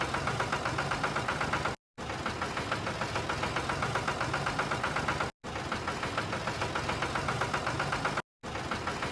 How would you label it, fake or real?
real